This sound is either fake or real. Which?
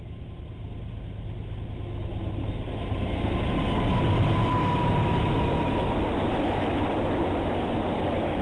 real